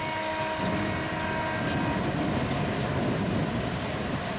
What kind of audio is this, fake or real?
real